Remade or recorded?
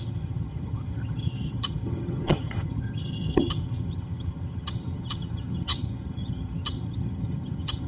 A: remade